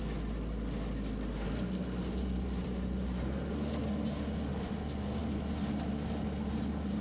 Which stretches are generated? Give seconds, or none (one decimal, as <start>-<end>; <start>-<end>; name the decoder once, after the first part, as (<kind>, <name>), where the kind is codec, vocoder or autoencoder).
1.8-3.5 (vocoder, BigVGAN v2)